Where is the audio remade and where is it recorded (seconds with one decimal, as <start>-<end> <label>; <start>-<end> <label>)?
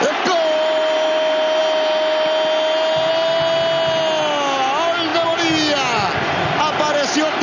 0.0-7.4 recorded